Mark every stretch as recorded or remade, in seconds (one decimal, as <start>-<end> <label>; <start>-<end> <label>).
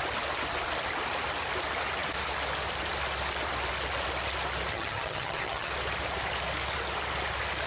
0.0-4.7 recorded; 4.7-5.7 remade; 5.7-7.7 recorded